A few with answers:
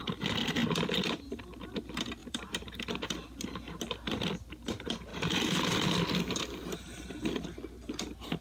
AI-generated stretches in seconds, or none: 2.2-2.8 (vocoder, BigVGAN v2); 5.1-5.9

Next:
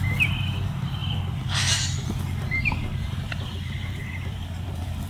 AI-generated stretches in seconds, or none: 0.0-5.1 (vocoder, BigVGAN v2)

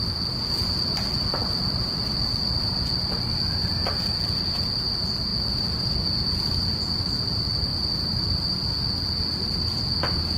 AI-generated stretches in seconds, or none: 5.3-5.9 (vocoder, BigVGAN v2); 7.7-8.7

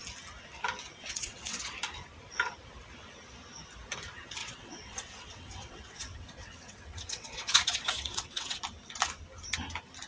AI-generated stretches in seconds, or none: 1.0-1.7 (vocoder, WaveNeXt); 4.4-8.6

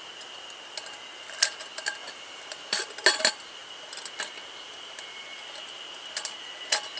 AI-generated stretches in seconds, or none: 2.0-2.8 (vocoder, BigVGAN v2)

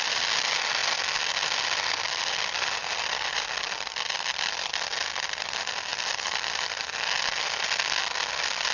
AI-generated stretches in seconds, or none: 2.8-4.7 (vocoder, BigVGAN v2)

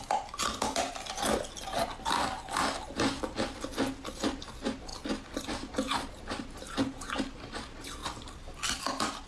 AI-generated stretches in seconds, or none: none

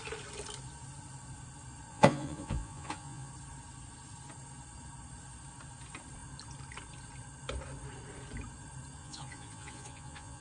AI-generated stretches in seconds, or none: 1.9-3.3 (vocoder, Vocos); 9.0-10.4